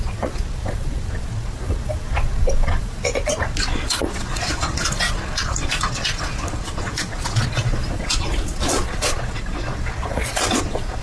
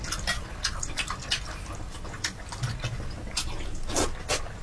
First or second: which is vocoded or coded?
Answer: first